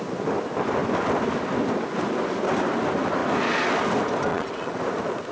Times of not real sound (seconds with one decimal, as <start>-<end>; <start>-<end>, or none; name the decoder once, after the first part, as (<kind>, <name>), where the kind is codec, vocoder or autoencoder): 4.3-4.8 (vocoder, WaveNeXt)